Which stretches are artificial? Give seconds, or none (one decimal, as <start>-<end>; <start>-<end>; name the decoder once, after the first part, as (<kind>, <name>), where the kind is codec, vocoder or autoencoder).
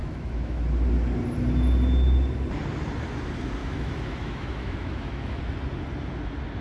0.0-0.6 (autoencoder, DAC-VAE); 3.6-5.4